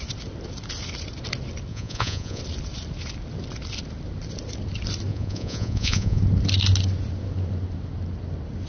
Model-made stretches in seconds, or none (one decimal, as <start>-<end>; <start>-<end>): 1.7-2.4; 5.1-6.2